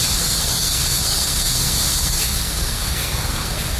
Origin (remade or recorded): remade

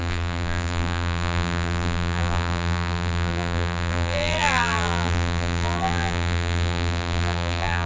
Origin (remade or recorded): remade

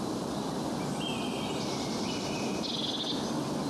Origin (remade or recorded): recorded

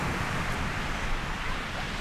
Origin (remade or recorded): recorded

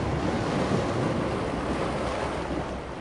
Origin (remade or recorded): recorded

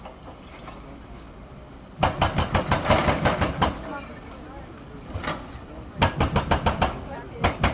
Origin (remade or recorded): recorded